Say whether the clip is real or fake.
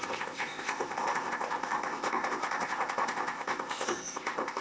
fake